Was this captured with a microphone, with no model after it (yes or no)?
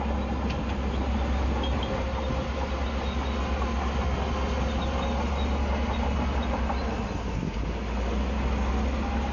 yes